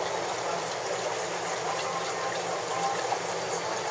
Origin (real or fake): real